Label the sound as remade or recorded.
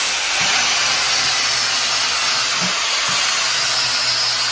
recorded